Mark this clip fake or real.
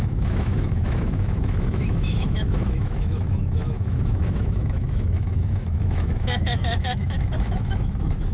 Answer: fake